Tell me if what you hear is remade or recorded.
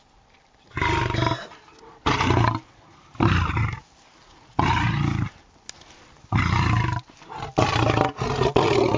recorded